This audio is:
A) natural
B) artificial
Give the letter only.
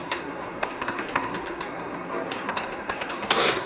B